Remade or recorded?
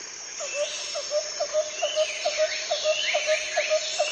recorded